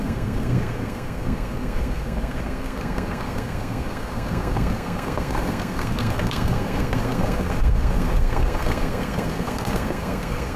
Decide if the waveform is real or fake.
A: fake